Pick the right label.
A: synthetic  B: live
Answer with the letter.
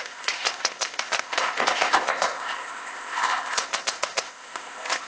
A